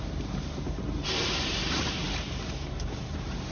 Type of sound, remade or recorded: remade